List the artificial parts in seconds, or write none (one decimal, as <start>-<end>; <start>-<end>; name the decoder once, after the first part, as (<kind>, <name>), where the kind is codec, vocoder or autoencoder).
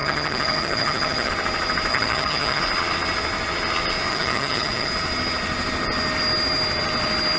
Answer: 0.0-1.3 (vocoder, HiFi-GAN); 1.9-2.6; 4.1-4.9